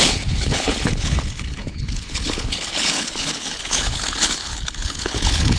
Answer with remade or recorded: remade